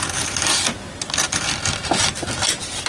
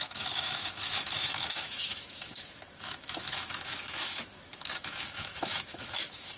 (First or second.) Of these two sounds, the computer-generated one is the second